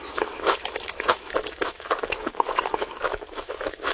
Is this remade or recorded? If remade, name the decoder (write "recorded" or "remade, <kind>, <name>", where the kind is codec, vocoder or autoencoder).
remade, autoencoder, DAC-VAE